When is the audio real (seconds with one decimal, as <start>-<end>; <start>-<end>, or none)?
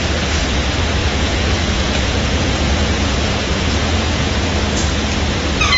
0.0-1.0; 4.5-5.8